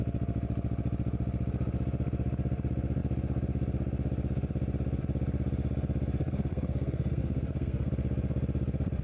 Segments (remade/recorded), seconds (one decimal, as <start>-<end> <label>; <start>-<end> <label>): 0.0-6.2 recorded; 6.2-7.9 remade; 7.9-9.0 recorded